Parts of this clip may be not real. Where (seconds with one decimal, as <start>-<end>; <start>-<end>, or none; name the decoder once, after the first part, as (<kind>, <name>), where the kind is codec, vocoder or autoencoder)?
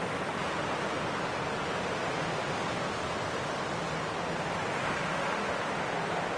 5.1-5.6 (autoencoder, DAC-VAE)